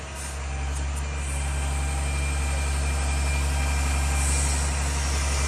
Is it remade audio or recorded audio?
recorded